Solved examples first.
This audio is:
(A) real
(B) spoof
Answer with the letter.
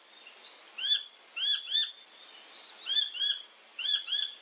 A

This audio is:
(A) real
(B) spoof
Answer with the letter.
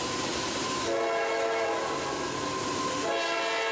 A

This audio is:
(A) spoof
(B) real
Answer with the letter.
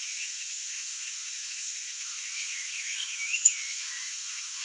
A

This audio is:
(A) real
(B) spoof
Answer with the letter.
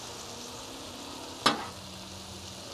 A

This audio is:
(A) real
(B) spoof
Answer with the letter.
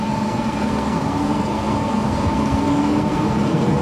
B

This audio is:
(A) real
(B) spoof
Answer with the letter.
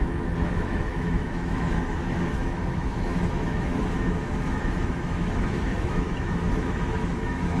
B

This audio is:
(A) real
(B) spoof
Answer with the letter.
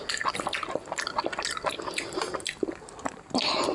A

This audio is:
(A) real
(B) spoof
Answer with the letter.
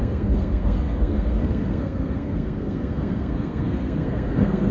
B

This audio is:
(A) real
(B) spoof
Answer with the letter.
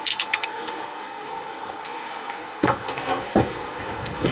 B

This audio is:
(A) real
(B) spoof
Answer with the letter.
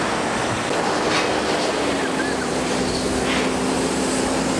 A